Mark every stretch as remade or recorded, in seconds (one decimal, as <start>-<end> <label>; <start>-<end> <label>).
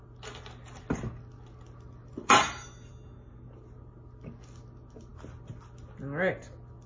0.0-2.0 recorded; 2.0-2.9 remade; 2.9-6.9 recorded